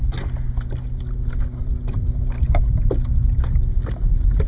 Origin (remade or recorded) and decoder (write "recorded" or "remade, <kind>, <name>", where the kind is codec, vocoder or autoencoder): recorded